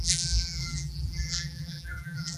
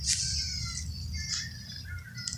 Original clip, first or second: second